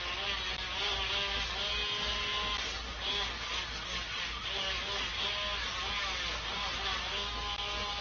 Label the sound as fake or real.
real